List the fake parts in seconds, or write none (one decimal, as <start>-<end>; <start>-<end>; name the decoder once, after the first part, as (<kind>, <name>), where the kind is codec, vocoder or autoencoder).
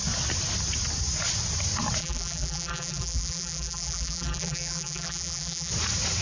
2.0-5.7 (vocoder, BigVGAN v2)